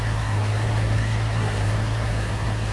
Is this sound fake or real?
fake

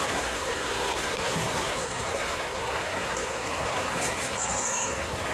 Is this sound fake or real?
fake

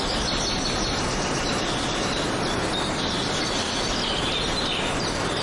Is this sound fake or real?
real